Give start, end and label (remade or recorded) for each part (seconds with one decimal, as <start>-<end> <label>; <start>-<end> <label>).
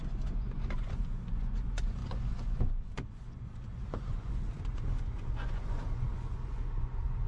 0.0-7.3 remade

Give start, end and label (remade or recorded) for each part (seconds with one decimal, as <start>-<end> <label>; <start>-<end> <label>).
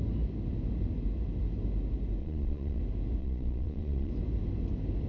0.0-2.2 recorded; 2.2-2.8 remade; 2.8-3.2 recorded; 3.2-4.1 remade; 4.1-5.1 recorded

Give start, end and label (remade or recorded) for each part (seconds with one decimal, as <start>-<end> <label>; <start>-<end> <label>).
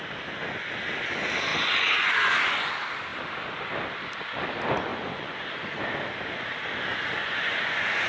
0.0-1.5 recorded; 1.5-2.7 remade; 2.7-4.9 recorded; 4.9-5.7 remade; 5.7-7.2 recorded; 7.2-8.1 remade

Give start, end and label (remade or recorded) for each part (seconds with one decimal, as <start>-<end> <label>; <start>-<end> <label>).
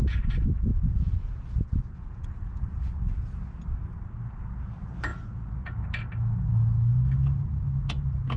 0.0-0.7 recorded; 0.7-3.6 remade; 3.6-5.1 recorded; 5.1-5.8 remade; 5.8-8.4 recorded